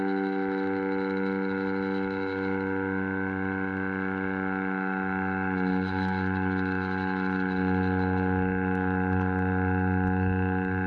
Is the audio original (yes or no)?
no